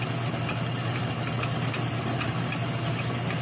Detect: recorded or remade recorded